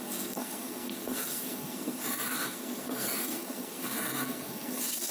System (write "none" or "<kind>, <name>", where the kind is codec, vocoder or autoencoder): codec, SNAC